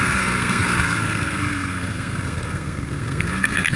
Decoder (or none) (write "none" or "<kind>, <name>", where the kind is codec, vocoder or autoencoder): codec, SNAC